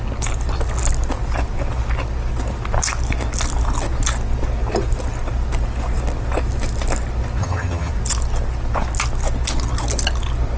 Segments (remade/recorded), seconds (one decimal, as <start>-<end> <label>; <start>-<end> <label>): 0.0-7.4 recorded; 7.4-7.9 remade; 7.9-10.6 recorded